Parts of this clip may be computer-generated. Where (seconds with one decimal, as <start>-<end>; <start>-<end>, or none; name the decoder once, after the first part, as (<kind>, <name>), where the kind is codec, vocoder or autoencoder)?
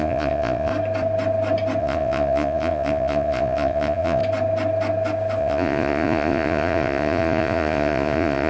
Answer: 0.0-0.7 (vocoder, Vocos); 1.8-4.2; 5.4-8.5